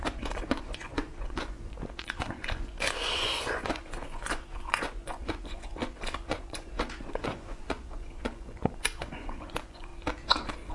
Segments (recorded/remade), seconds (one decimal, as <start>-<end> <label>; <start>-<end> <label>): 0.0-9.9 remade; 9.9-10.7 recorded

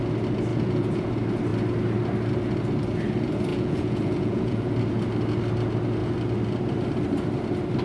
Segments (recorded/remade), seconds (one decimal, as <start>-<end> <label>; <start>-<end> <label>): 0.0-0.5 recorded; 0.5-1.1 remade; 1.1-3.5 recorded; 3.5-4.7 remade; 4.7-7.8 recorded

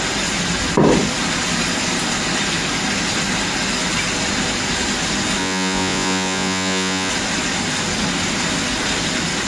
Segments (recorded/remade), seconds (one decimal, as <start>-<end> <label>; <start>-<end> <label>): 0.0-5.4 recorded; 5.4-7.1 remade; 7.1-9.5 recorded

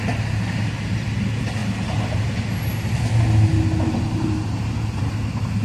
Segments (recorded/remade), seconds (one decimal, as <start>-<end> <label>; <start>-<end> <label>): 0.0-5.6 recorded